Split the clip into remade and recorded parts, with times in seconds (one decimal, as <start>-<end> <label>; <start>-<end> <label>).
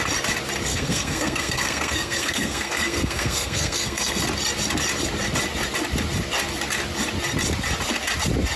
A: 0.0-0.7 recorded; 0.7-4.2 remade; 4.2-8.6 recorded